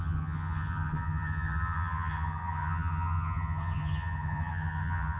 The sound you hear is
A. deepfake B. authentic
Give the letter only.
A